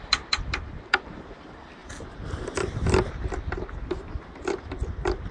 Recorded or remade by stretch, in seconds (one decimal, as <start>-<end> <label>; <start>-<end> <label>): 0.0-1.8 remade; 1.8-5.3 recorded